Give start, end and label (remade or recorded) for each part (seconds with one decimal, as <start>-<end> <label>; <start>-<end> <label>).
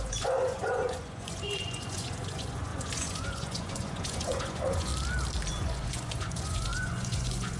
0.0-4.9 remade; 4.9-5.5 recorded; 5.5-7.6 remade